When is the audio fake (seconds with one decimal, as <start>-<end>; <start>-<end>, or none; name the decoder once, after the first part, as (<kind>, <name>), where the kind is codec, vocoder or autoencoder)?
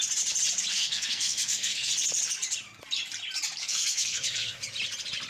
0.7-1.9 (codec, SNAC); 3.6-4.6